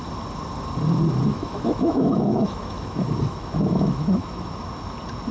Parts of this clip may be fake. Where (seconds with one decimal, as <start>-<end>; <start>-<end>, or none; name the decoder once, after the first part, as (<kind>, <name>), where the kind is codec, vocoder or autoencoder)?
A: 1.3-4.5 (autoencoder, DAC-VAE)

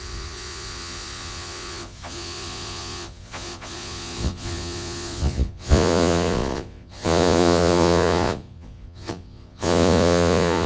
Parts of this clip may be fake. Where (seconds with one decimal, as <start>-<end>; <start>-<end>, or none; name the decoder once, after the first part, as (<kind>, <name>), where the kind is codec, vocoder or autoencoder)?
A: 0.0-10.7 (vocoder, Vocos)